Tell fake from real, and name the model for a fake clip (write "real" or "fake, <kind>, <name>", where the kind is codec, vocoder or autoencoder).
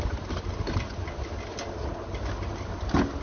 real